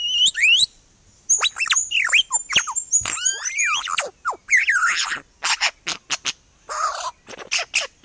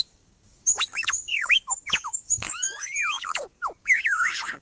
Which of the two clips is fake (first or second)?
second